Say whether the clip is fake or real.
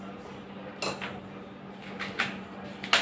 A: real